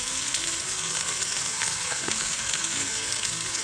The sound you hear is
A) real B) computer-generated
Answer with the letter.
B